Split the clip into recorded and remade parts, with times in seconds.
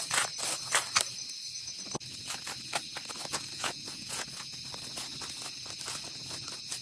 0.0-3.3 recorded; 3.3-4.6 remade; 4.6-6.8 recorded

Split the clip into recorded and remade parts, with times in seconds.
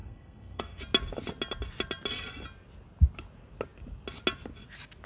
0.0-0.8 remade; 0.8-5.1 recorded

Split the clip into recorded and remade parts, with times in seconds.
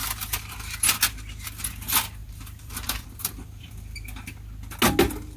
0.0-0.9 remade; 0.9-2.2 recorded; 2.2-3.7 remade; 3.7-5.4 recorded